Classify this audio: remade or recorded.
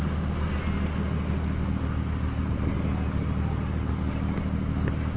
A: recorded